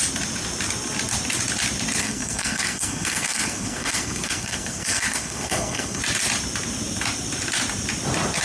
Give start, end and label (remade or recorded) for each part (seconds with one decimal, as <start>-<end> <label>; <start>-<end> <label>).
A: 0.0-2.0 recorded; 2.0-6.0 remade; 6.0-8.4 recorded